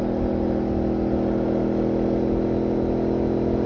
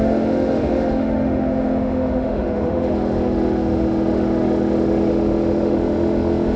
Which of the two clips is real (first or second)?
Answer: first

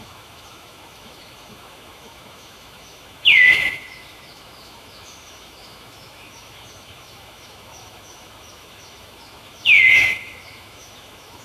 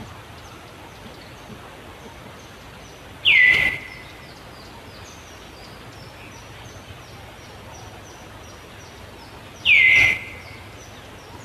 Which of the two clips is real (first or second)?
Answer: second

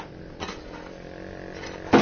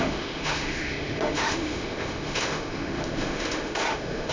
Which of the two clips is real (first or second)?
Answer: first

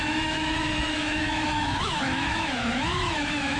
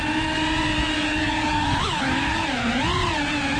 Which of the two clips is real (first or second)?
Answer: second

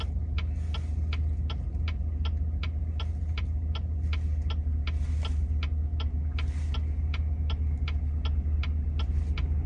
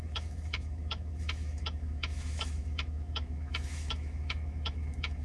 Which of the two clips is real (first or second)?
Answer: first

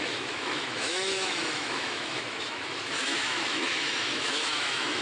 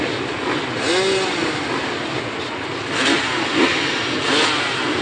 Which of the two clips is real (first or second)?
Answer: second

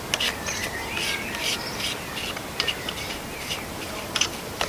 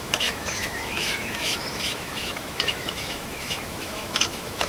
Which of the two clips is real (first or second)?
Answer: first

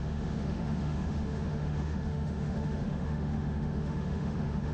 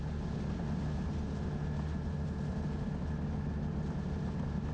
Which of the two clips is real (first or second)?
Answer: second